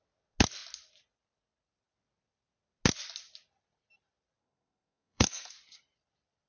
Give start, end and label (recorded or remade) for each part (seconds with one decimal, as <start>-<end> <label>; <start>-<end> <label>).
0.0-4.4 recorded; 4.4-5.5 remade; 5.5-6.5 recorded